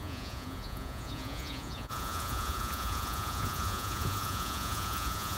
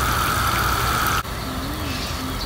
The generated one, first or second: first